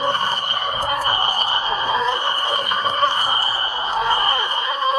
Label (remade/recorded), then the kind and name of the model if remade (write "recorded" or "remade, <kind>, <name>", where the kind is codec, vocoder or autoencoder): remade, codec, SNAC